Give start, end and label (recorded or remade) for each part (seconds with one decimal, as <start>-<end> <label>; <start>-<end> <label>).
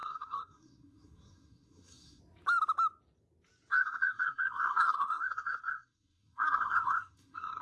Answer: 0.0-2.2 remade; 2.2-3.7 recorded; 3.7-7.6 remade